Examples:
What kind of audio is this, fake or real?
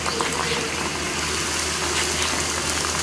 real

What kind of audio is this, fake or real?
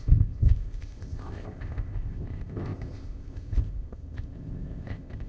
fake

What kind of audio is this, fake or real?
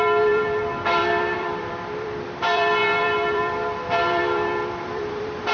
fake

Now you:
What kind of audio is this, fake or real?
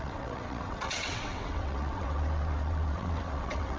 fake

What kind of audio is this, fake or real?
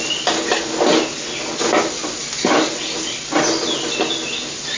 real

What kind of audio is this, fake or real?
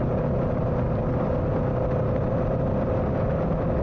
real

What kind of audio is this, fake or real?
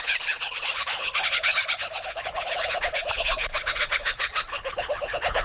fake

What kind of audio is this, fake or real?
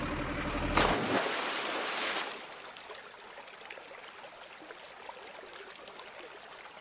real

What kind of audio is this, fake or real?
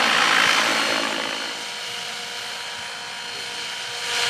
real